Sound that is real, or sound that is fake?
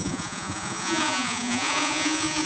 fake